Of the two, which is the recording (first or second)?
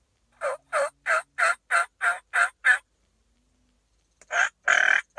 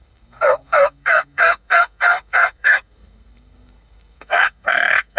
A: first